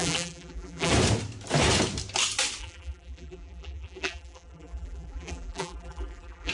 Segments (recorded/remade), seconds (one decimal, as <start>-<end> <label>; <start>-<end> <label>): 0.0-0.9 remade; 0.9-2.6 recorded; 2.6-6.5 remade